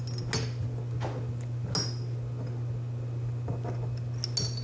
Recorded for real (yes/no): yes